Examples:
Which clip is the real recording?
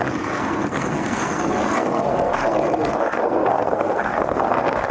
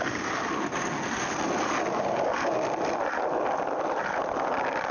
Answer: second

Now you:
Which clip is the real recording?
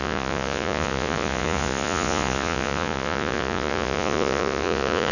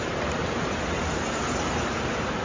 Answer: second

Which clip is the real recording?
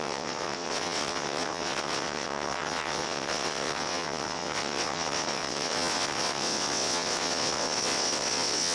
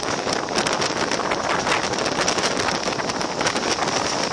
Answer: second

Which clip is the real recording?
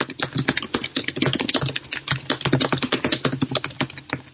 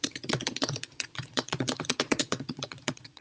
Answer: first